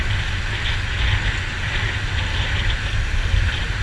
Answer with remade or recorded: recorded